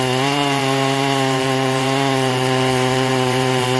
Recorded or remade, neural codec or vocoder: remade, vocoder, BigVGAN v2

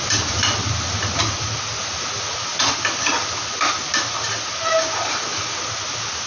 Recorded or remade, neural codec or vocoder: recorded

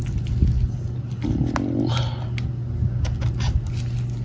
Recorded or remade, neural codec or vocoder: recorded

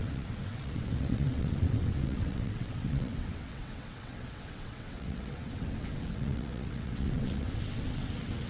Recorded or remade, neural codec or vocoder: remade, vocoder, WaveNeXt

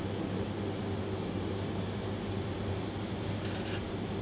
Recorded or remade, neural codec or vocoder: recorded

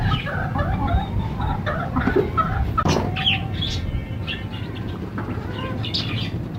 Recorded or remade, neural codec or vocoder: recorded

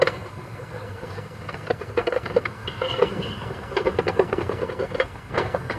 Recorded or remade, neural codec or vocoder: remade, codec, SNAC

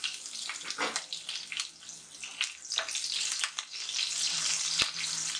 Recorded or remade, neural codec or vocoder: recorded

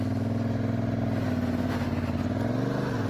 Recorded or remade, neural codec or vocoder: recorded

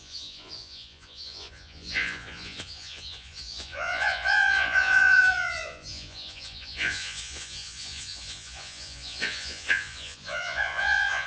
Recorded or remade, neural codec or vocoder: remade, vocoder, Vocos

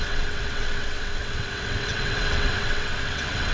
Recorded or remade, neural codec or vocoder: remade, vocoder, WaveNeXt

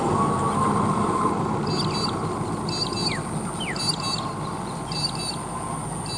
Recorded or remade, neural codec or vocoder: recorded